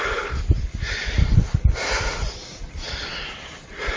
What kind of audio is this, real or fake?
real